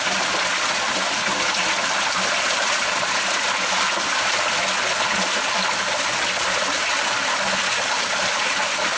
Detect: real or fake real